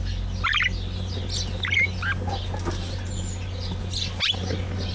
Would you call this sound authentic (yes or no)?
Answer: yes